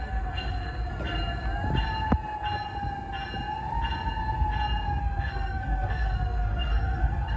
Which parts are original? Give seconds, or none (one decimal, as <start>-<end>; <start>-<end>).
0.9-5.0